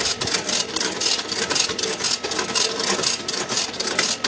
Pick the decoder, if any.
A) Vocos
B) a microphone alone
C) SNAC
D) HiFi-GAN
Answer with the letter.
B